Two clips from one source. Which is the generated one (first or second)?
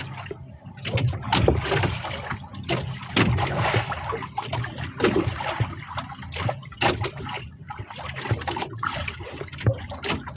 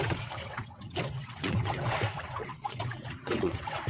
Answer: second